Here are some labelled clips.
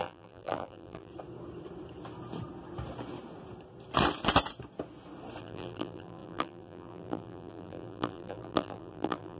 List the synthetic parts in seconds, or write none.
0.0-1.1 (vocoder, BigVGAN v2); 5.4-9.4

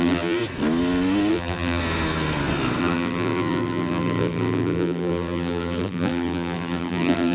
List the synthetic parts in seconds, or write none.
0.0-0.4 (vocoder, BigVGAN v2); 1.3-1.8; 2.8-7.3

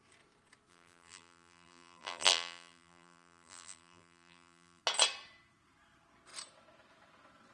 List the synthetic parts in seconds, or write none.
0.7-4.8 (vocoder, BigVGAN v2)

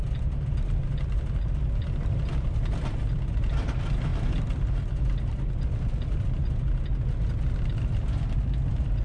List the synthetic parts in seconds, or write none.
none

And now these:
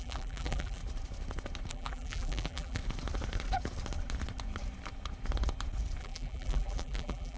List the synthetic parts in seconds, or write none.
0.0-0.8 (vocoder, BigVGAN v2); 1.7-2.8; 6.0-7.4

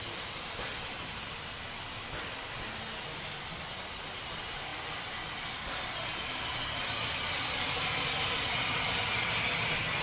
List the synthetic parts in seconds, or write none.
0.0-0.7 (vocoder, BigVGAN v2); 3.9-4.7; 7.2-10.0

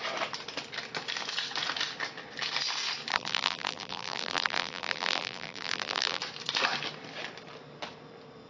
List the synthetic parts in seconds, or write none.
3.1-6.2 (vocoder, BigVGAN v2)